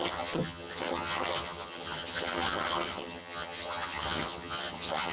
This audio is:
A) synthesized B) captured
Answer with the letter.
A